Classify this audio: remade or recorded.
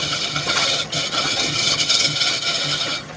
remade